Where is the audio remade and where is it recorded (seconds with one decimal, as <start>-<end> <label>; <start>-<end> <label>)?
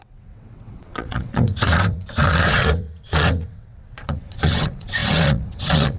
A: 0.0-6.0 remade